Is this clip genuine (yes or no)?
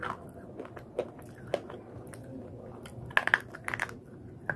yes